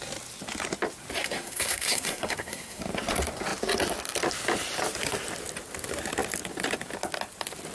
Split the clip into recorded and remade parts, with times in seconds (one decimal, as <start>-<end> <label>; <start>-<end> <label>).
0.0-1.2 recorded; 1.2-2.8 remade; 2.8-7.7 recorded